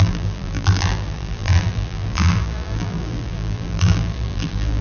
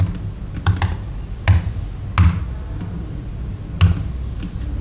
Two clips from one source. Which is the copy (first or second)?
first